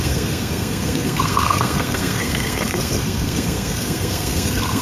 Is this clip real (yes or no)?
no